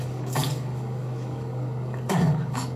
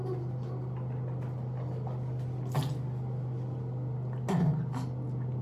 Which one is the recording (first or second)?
second